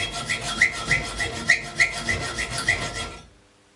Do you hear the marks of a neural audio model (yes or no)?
no